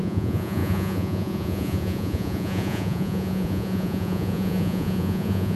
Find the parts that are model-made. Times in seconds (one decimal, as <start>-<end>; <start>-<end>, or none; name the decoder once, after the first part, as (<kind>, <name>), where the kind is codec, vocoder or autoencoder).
0.0-5.6 (vocoder, Vocos)